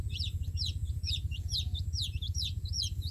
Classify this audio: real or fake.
fake